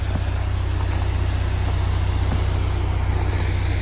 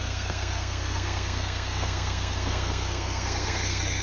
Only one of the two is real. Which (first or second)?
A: first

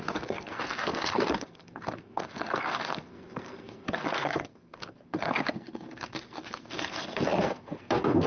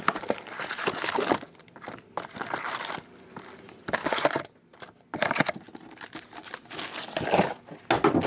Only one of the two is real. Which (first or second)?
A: second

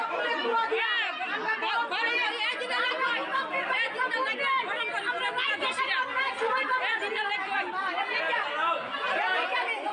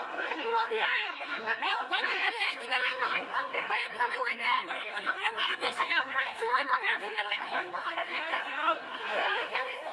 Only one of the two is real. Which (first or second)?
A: first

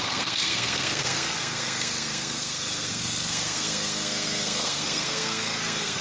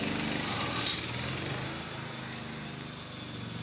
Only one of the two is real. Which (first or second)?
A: second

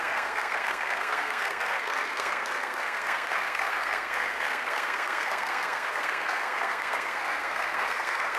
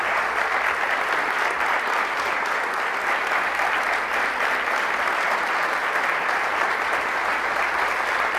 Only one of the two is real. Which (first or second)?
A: second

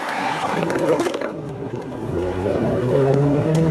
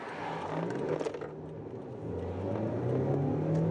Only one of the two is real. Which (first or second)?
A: second